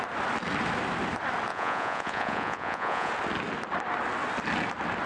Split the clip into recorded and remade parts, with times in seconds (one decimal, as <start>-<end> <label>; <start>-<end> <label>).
0.0-1.5 recorded; 1.5-3.1 remade; 3.1-5.1 recorded